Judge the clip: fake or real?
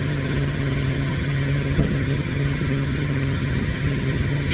fake